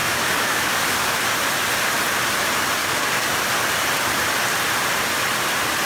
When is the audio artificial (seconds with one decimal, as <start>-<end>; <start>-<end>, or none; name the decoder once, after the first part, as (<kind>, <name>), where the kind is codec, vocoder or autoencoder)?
0.0-1.2 (codec, DAC); 2.8-3.3